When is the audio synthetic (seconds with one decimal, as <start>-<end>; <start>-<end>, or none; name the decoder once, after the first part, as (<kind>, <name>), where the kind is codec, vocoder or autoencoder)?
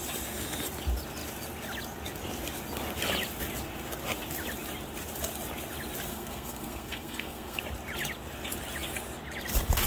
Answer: 6.1-7.6 (codec, SNAC)